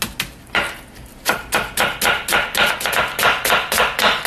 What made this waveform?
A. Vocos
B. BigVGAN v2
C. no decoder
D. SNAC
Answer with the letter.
C